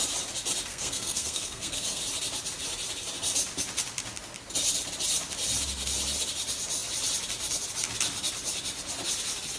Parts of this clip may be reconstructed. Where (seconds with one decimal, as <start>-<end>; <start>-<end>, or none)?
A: 0.7-2.0